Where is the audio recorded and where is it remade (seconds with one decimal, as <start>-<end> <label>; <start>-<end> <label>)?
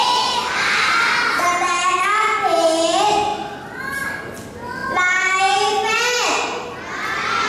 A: 0.0-7.5 recorded